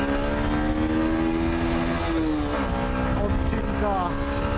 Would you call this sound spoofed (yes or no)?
no